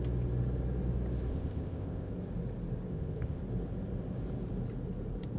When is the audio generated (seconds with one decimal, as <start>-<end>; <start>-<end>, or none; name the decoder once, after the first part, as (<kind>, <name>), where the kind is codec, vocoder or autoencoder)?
1.3-2.1 (codec, ZipCodec); 2.9-3.4